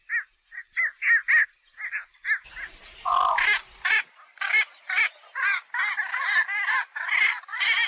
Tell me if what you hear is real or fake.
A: real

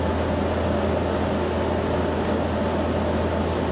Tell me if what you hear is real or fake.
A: real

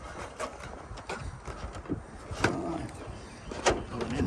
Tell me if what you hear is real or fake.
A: real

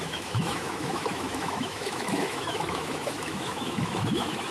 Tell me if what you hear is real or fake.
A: fake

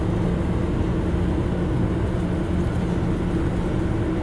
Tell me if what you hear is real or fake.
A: real